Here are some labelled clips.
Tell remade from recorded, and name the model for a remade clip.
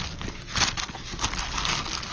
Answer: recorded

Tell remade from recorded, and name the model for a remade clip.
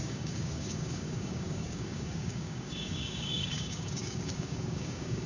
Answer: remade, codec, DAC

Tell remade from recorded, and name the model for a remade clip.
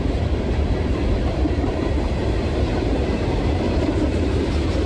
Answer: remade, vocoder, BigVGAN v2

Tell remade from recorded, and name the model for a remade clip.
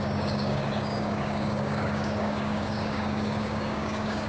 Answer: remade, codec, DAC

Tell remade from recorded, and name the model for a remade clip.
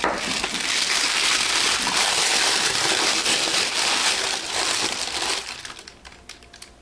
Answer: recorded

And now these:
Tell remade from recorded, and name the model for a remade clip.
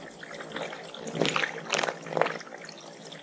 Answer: recorded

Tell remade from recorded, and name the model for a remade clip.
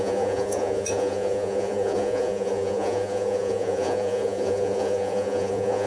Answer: remade, vocoder, Vocos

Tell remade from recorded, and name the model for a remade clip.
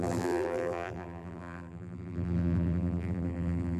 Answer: remade, vocoder, BigVGAN v2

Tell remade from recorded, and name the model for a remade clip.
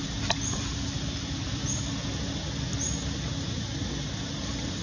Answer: recorded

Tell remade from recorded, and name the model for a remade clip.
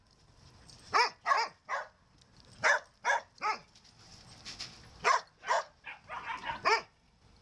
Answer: recorded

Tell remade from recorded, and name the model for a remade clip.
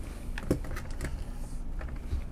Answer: recorded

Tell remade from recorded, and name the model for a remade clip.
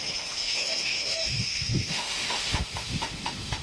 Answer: remade, autoencoder, DAC-VAE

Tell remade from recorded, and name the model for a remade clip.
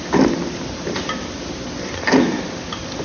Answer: recorded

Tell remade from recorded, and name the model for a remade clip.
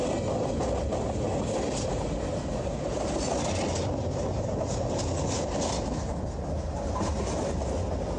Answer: recorded